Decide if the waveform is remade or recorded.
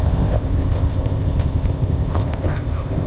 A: remade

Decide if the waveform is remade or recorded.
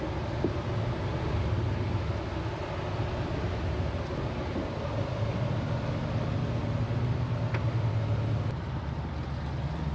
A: recorded